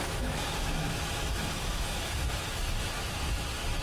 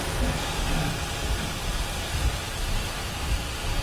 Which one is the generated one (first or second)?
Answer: first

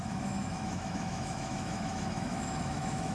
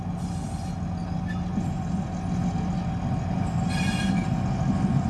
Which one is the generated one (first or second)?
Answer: first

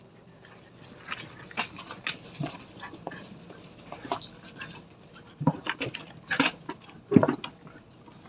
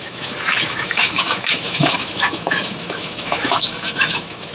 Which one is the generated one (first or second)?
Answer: second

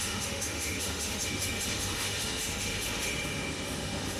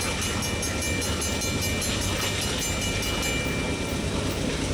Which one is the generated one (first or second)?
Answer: first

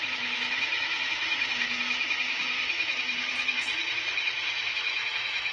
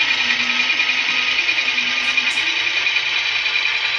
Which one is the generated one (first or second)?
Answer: first